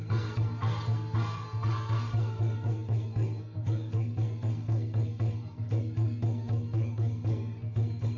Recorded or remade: remade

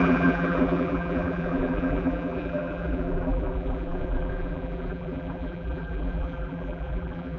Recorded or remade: remade